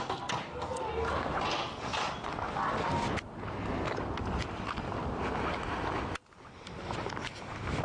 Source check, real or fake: real